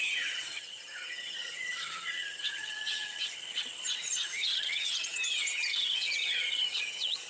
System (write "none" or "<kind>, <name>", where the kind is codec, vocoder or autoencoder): vocoder, HiFi-GAN